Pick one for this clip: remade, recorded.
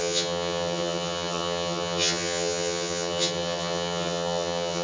remade